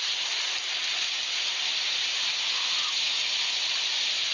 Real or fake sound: real